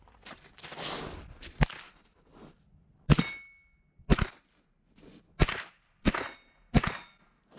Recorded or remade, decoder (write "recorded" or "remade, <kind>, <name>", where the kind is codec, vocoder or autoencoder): recorded